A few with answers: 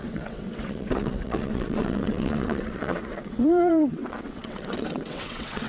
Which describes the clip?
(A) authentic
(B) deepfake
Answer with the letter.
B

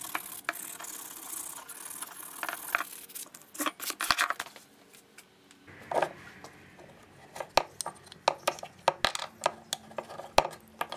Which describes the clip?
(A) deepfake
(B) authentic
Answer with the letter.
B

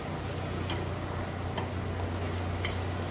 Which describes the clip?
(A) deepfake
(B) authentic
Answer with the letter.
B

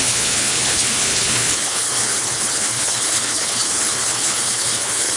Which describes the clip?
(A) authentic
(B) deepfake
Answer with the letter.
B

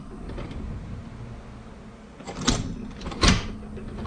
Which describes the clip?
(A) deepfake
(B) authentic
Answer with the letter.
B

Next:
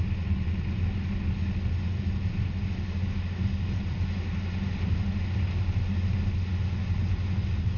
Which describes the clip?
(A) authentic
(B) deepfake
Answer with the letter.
A